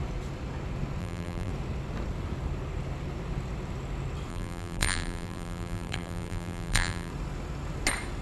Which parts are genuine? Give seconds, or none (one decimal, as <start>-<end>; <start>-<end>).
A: 0.0-1.0; 1.5-4.3; 7.1-8.2